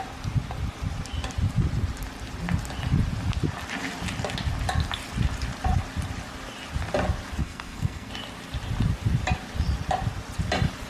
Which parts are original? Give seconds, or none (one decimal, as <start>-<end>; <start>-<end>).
0.0-7.4; 8.1-10.9